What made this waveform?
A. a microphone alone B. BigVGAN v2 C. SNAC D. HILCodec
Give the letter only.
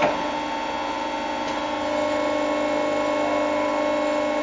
A